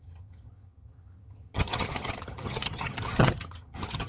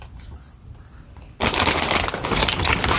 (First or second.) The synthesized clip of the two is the first